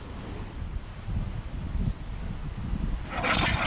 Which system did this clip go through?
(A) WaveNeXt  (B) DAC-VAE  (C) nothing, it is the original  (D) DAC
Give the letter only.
C